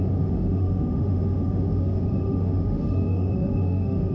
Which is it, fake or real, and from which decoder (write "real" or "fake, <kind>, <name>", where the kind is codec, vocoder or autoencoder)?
fake, autoencoder, DAC-VAE